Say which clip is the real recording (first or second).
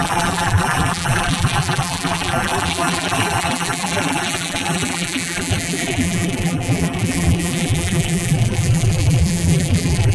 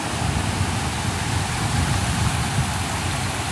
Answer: second